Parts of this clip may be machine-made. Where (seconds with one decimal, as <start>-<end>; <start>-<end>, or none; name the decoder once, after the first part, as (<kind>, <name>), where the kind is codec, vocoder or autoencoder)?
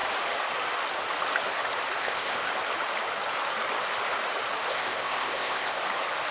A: 2.0-2.5 (codec, ZipCodec); 4.7-5.8